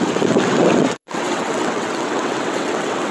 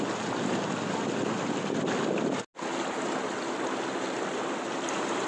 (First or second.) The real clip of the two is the second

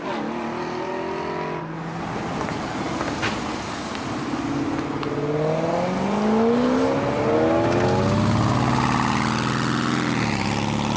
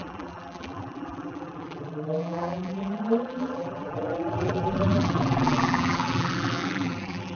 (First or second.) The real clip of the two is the first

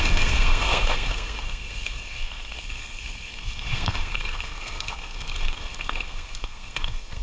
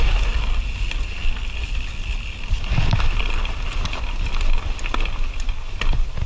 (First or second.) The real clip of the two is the second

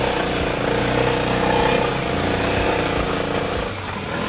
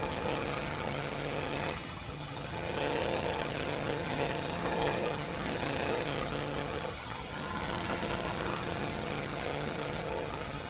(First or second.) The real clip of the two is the first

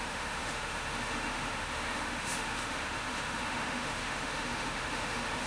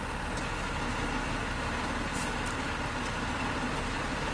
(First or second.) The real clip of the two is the second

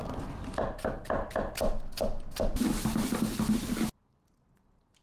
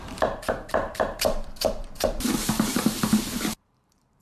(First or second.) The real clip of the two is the first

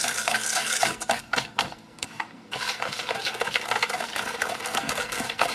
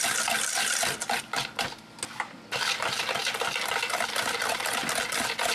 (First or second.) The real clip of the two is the second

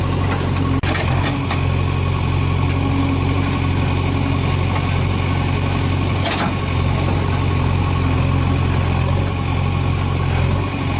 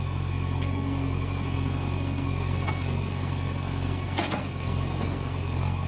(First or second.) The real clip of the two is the first